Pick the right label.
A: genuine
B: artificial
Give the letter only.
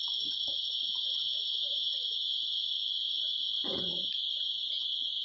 B